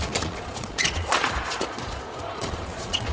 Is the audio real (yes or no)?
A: no